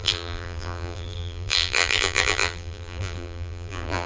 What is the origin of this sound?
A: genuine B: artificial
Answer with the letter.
B